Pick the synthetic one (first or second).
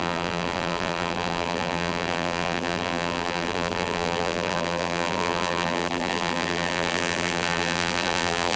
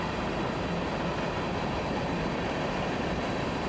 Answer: first